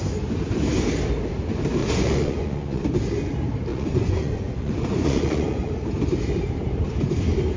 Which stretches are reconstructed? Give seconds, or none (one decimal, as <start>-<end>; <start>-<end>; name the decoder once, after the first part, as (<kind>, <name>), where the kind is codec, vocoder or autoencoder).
1.8-2.8 (vocoder, Vocos); 3.7-5.7